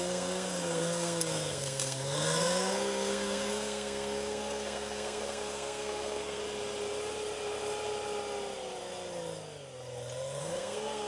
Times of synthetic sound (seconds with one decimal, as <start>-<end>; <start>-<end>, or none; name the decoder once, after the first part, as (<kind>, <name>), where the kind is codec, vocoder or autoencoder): 0.0-6.4 (codec, SNAC); 10.4-11.1